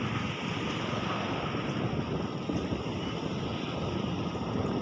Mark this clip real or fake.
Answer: real